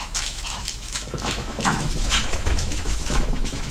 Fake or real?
fake